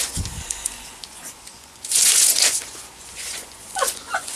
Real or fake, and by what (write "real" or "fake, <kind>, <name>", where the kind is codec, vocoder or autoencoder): fake, vocoder, Vocos